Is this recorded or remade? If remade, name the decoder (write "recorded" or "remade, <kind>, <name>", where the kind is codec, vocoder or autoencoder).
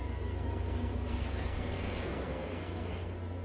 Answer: remade, codec, SNAC